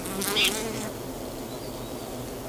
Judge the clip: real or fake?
real